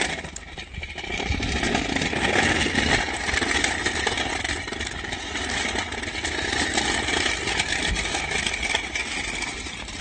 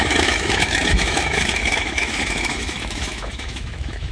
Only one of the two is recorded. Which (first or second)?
first